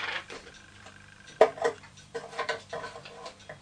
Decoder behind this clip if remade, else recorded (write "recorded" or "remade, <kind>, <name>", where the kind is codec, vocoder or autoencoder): remade, vocoder, BigVGAN v2